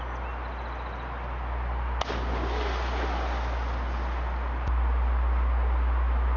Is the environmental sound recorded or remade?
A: recorded